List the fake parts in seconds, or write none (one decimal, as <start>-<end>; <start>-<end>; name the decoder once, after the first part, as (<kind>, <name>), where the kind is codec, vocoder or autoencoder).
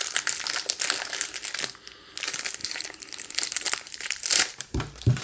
2.6-5.2 (vocoder, BigVGAN v2)